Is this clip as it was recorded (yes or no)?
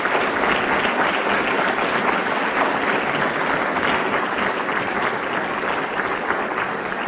yes